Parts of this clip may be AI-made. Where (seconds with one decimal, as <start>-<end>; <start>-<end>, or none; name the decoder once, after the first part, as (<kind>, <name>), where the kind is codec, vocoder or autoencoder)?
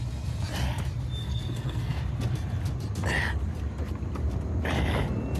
1.2-2.0 (codec, SNAC)